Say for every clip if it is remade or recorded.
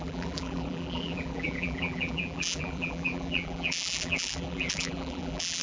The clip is remade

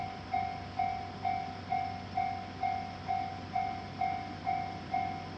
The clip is remade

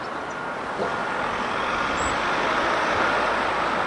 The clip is recorded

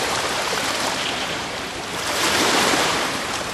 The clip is remade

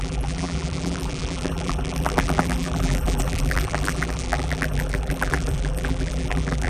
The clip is remade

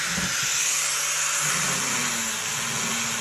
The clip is recorded